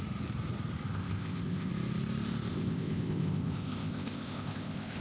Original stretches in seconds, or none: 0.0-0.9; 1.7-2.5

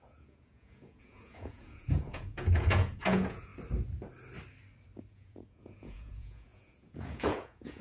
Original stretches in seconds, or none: 3.5-5.1

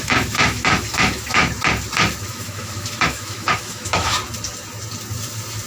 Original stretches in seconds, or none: 1.4-2.3; 4.2-5.7

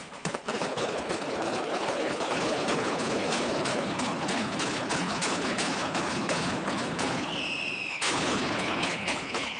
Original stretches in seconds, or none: 7.3-7.9

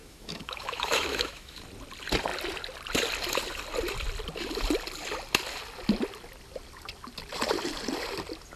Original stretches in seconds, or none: 1.6-8.6

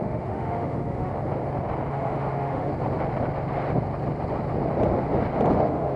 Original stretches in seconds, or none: 1.1-1.9; 2.7-5.5

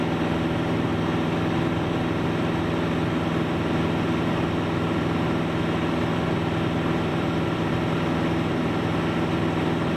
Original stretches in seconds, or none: 0.0-7.1; 7.7-10.0